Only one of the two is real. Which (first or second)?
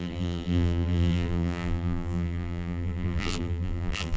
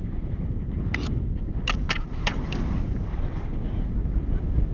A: second